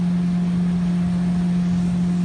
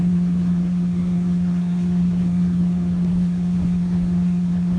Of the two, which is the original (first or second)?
first